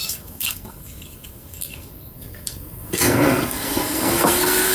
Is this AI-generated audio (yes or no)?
yes